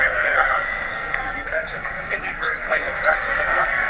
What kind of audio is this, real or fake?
fake